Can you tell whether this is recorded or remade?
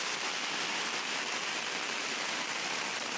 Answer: recorded